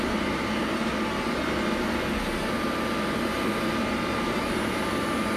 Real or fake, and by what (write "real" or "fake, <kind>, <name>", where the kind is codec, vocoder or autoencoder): real